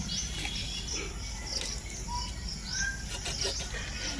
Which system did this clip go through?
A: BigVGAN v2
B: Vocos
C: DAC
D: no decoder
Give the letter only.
D